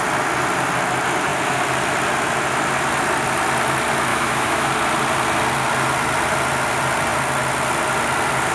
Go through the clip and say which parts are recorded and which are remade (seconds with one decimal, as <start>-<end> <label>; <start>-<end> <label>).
0.0-4.1 recorded; 4.1-4.7 remade; 4.7-8.5 recorded